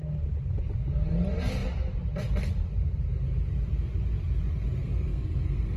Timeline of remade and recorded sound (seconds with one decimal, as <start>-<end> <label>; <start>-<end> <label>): 0.0-4.8 recorded; 4.8-5.8 remade